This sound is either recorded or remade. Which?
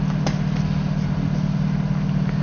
recorded